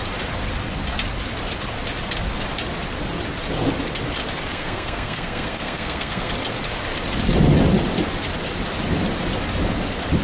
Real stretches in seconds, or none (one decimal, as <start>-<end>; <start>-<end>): 0.0-4.5; 6.3-10.2